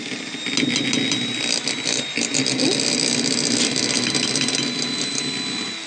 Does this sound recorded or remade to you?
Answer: recorded